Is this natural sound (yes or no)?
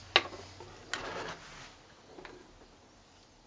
yes